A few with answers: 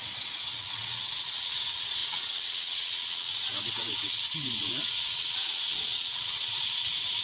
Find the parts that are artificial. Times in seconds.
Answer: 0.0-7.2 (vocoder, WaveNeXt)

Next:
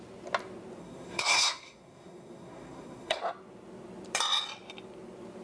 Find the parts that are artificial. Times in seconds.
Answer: 0.8-3.2 (codec, SNAC)

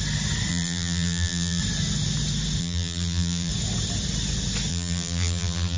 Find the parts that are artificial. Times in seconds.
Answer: 0.5-1.6 (vocoder, BigVGAN v2); 2.6-3.5; 4.7-5.8

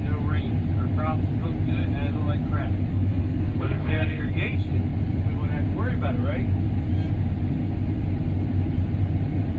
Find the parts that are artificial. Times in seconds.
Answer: 2.9-4.2 (codec, SNAC)

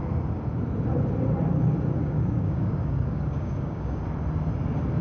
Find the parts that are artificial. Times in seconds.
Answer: 2.0-4.0 (codec, DAC)

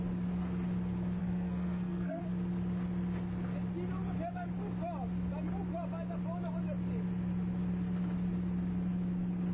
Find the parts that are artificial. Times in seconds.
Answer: 1.2-2.2 (codec, SNAC)